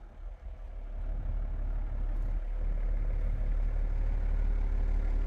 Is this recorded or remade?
recorded